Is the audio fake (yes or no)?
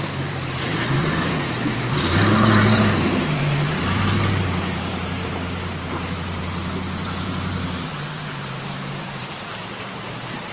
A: yes